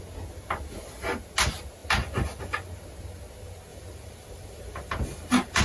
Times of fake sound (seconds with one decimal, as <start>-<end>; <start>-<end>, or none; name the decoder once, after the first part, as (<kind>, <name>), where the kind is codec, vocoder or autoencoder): 3.7-5.6 (vocoder, BigVGAN v2)